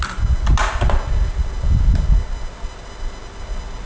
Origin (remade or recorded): recorded